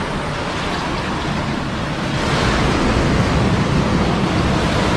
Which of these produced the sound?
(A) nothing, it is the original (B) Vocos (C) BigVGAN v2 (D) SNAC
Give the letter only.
A